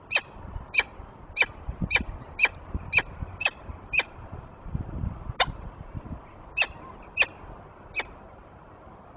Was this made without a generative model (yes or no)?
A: yes